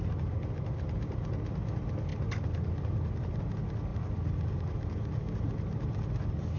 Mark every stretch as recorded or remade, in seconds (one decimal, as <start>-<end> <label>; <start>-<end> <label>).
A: 0.0-2.1 recorded; 2.1-3.4 remade; 3.4-3.9 recorded; 3.9-4.5 remade; 4.5-6.6 recorded